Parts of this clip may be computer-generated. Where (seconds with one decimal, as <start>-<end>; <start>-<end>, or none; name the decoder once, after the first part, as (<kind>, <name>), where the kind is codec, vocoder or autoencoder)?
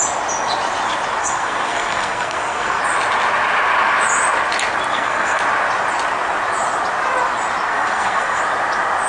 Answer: 1.2-2.8 (codec, SNAC); 4.9-5.4; 7.7-8.4